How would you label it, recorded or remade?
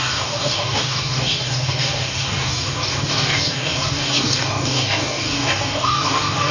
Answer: remade